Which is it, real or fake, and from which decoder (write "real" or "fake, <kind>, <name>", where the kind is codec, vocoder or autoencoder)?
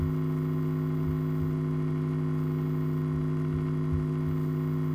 real